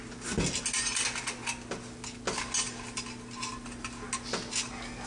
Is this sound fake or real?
real